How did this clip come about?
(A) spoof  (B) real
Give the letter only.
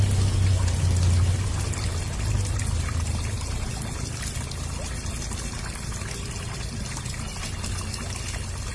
B